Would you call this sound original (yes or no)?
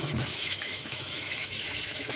no